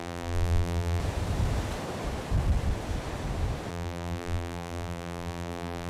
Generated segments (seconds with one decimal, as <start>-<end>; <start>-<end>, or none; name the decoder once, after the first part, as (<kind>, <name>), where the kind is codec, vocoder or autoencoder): 0.0-1.0 (vocoder, BigVGAN v2); 3.7-5.9